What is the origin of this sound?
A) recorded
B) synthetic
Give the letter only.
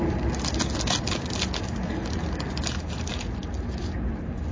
A